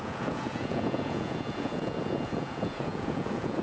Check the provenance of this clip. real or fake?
fake